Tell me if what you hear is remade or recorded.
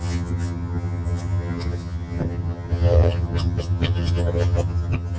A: remade